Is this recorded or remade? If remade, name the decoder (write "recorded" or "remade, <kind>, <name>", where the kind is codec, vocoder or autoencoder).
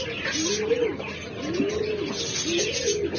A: recorded